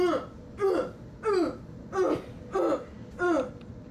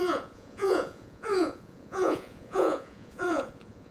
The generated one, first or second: second